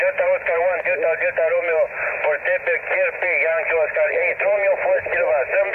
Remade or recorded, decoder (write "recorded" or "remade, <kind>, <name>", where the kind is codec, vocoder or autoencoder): recorded